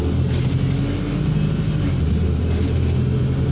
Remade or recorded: recorded